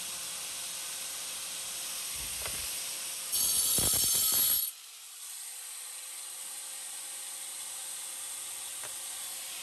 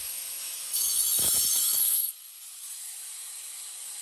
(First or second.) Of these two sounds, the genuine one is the first